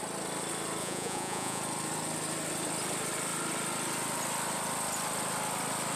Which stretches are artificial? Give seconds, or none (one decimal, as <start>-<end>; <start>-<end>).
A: 0.8-1.6